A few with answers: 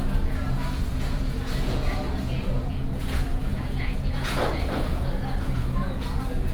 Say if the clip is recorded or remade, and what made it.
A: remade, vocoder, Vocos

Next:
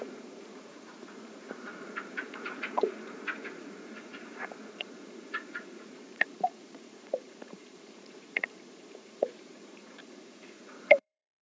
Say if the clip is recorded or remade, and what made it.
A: remade, vocoder, Vocos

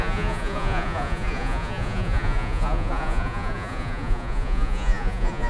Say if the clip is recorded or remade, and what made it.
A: remade, vocoder, Vocos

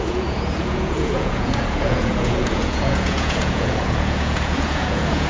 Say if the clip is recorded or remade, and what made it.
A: remade, vocoder, Vocos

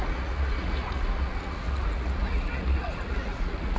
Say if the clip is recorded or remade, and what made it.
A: remade, vocoder, Vocos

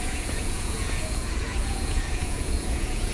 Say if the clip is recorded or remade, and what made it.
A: remade, vocoder, Vocos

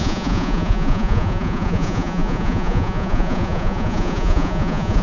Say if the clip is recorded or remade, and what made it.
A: remade, vocoder, Vocos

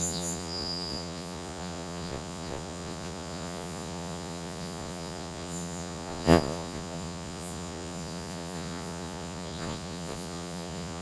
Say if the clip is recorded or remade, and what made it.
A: remade, vocoder, Vocos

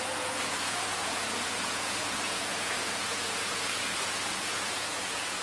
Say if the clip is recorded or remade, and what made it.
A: remade, vocoder, Vocos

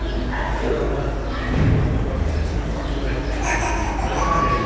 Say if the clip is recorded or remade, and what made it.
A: recorded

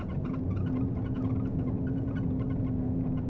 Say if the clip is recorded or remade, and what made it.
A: remade, vocoder, Vocos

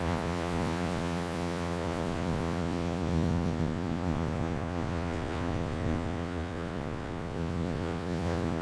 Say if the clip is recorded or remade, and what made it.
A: remade, vocoder, Vocos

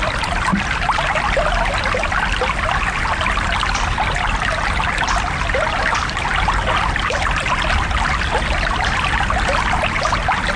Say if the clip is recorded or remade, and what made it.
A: recorded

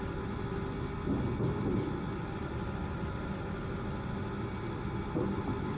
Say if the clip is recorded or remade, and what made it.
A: recorded